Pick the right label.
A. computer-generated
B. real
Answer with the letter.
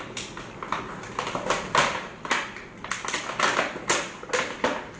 B